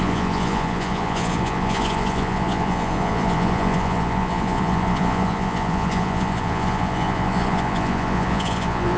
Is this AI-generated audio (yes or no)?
yes